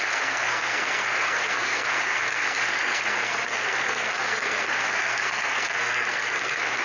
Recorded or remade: remade